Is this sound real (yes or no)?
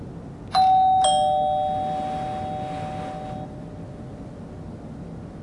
yes